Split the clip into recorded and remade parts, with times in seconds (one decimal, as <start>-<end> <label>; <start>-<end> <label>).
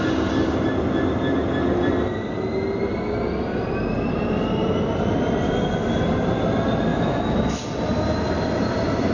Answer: 0.0-6.9 recorded; 6.9-7.6 remade; 7.6-9.1 recorded